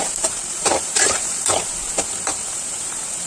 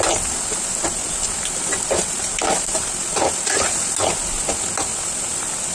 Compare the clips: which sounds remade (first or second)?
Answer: first